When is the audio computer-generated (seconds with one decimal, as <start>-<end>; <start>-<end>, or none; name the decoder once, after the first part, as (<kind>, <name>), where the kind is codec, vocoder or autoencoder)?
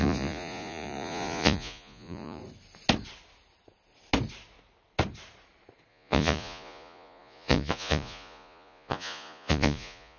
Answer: 0.0-2.4 (vocoder, Vocos); 5.9-10.2